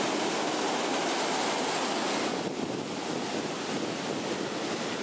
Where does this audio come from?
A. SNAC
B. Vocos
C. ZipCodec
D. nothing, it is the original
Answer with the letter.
D